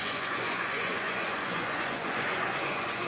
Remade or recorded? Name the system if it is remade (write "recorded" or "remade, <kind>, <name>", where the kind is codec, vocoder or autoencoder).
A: remade, vocoder, Vocos